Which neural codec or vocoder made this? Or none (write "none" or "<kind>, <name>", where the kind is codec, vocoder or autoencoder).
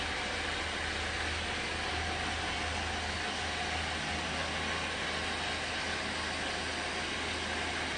none